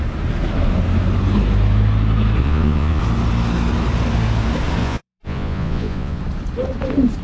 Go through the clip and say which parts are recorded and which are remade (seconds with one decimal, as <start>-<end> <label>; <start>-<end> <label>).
0.0-2.4 recorded; 2.4-3.0 remade; 3.0-4.8 recorded; 4.8-6.2 remade; 6.2-7.2 recorded